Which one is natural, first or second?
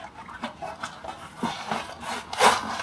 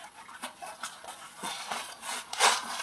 first